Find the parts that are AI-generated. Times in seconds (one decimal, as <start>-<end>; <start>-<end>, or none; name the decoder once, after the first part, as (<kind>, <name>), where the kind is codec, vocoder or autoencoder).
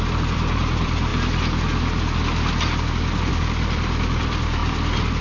0.0-1.1 (vocoder, BigVGAN v2); 3.3-5.2